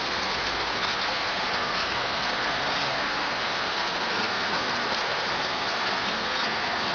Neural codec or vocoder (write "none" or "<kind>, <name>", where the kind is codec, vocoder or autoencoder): codec, SNAC